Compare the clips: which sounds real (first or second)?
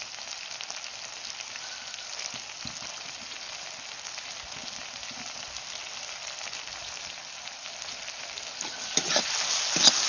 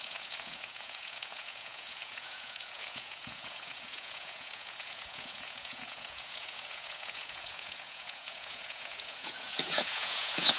first